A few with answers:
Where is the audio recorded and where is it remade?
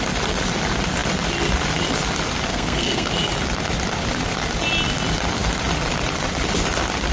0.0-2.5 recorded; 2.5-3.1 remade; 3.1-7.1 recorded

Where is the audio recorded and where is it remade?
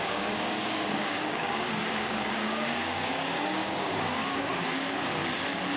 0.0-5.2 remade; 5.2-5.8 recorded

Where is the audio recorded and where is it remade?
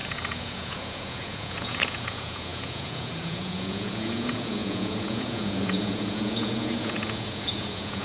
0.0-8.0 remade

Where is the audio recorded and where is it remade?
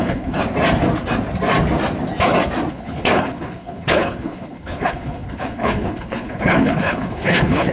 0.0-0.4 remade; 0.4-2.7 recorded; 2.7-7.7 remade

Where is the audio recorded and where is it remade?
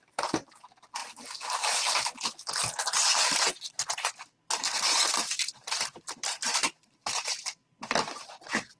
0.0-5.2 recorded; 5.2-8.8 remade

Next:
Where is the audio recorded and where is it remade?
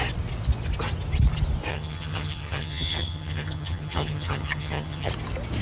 0.0-1.7 recorded; 1.7-5.1 remade; 5.1-5.6 recorded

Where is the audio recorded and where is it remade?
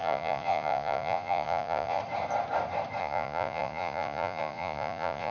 0.0-2.0 remade; 2.0-3.0 recorded; 3.0-5.3 remade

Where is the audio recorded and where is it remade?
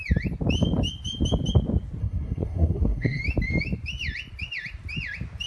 0.0-2.0 recorded; 2.0-3.2 remade; 3.2-5.5 recorded